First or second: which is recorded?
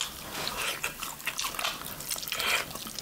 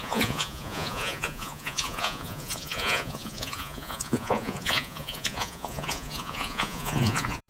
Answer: first